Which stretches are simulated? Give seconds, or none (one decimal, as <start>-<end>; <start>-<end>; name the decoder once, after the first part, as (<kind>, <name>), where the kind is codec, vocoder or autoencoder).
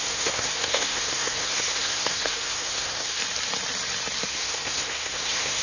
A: 0.0-3.2 (codec, SNAC); 4.3-5.6